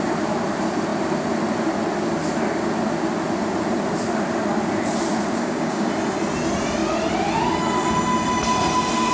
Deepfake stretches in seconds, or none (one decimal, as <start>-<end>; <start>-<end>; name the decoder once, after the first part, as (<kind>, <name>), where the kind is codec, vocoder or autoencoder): 5.4-5.9 (codec, DAC)

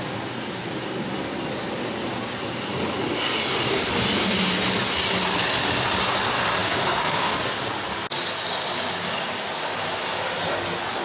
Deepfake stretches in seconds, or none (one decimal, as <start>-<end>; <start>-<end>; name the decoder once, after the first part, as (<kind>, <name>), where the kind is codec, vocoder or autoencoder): 6.6-7.4 (codec, DAC)

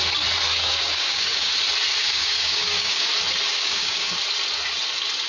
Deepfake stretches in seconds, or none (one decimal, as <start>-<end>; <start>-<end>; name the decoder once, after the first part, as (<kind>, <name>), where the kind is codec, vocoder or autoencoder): 0.5-1.5 (codec, DAC); 2.0-3.1; 3.5-4.1